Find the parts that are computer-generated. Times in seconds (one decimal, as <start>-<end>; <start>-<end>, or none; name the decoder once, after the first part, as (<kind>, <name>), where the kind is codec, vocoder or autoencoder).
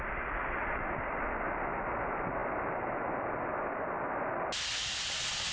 none